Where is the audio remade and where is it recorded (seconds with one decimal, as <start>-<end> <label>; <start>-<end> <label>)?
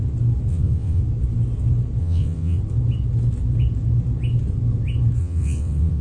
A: 0.0-0.5 recorded; 0.5-1.0 remade; 1.0-2.0 recorded; 2.0-2.6 remade; 2.6-5.2 recorded; 5.2-6.0 remade